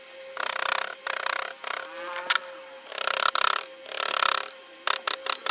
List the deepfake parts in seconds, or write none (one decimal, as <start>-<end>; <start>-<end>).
none